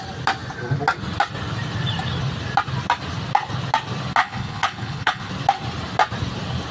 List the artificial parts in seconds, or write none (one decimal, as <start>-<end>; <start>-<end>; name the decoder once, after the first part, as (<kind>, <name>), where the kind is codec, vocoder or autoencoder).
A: 4.2-5.3 (codec, HILCodec)